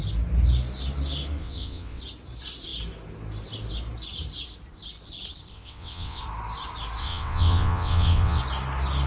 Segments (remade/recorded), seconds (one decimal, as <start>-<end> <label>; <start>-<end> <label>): 0.0-1.4 recorded; 1.4-2.0 remade; 2.0-5.5 recorded; 5.5-6.2 remade; 6.2-7.0 recorded; 7.0-8.4 remade; 8.4-9.1 recorded